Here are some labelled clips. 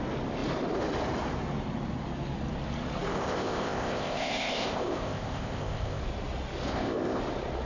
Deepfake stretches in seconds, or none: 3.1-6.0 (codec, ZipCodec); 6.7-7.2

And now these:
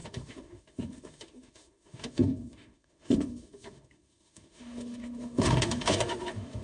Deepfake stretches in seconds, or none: 0.0-6.6 (autoencoder, DAC-VAE)

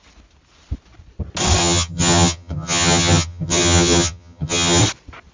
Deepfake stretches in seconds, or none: 1.6-4.8 (vocoder, HiFi-GAN)